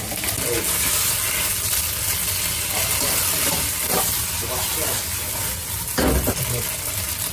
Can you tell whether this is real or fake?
real